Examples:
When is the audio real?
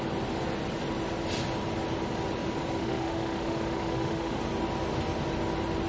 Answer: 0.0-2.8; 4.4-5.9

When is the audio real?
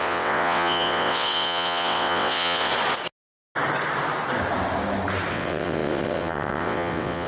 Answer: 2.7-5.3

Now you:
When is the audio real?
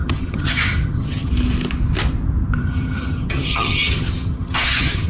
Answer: 1.3-2.6